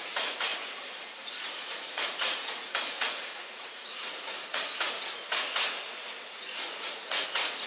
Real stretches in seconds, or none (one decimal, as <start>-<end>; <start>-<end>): none